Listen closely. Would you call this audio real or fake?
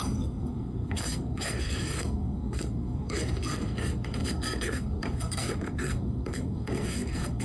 fake